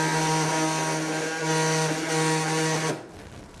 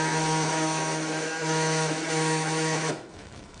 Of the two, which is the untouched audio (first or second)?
first